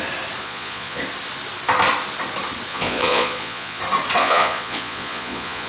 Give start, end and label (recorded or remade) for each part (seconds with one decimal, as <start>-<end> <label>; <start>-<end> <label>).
0.0-0.4 recorded; 0.4-1.0 remade; 1.0-2.7 recorded; 2.7-3.8 remade; 3.8-4.2 recorded; 4.2-5.7 remade